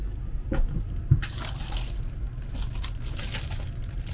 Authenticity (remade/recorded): recorded